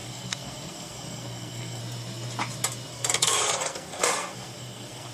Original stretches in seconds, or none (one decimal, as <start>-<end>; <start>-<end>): 1.8-2.9